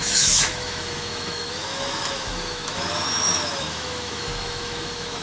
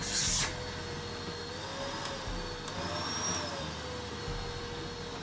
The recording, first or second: second